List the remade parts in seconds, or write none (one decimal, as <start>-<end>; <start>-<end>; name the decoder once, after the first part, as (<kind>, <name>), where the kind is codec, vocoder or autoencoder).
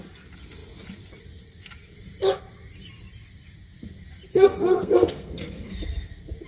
4.3-5.7 (codec, SNAC)